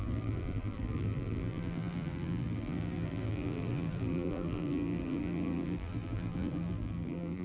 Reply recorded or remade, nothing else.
remade